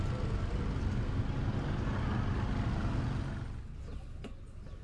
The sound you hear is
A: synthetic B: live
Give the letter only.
B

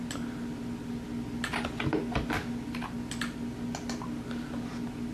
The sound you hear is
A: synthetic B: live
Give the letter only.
B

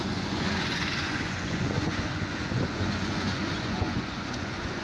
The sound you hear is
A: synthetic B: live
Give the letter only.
A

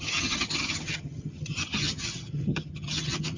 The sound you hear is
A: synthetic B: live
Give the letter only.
A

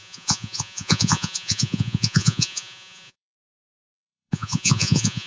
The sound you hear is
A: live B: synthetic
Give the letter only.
B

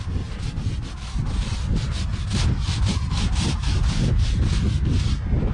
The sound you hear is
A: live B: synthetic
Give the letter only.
A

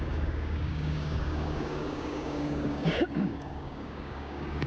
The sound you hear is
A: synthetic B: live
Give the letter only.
A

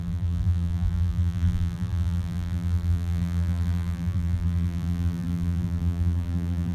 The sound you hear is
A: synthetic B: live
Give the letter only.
A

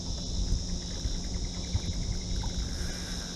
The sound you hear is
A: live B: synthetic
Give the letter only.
A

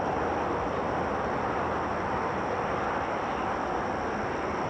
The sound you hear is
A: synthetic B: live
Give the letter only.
B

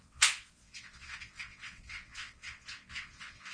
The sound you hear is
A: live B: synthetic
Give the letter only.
B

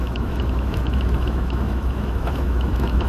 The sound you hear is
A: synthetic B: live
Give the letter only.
A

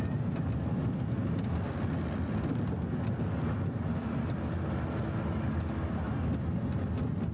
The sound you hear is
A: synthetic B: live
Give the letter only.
B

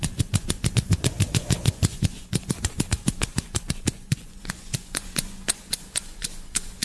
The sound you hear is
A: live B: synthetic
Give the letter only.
B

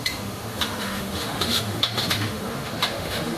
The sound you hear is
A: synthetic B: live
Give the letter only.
A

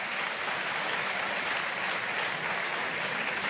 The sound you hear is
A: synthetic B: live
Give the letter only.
B